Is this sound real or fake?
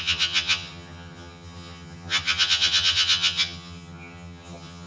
fake